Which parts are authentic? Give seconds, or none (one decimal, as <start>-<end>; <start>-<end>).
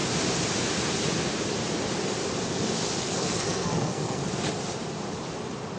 0.0-3.0; 4.2-5.8